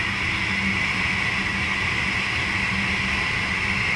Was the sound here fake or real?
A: real